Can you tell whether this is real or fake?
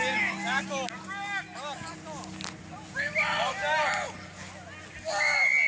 real